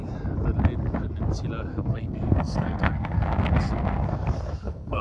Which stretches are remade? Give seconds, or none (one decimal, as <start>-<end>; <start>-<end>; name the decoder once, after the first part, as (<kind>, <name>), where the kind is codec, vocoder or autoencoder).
1.7-5.0 (codec, SNAC)